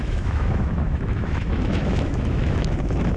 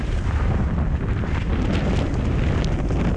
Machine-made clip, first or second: first